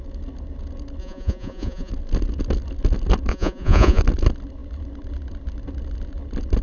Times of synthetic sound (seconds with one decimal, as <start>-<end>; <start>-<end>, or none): 1.0-1.9; 3.3-4.0